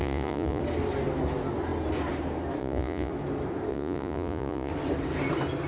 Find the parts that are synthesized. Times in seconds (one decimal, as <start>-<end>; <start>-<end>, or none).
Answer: 0.0-0.6; 2.6-3.1; 3.7-4.7